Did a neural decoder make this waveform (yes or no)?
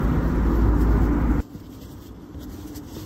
no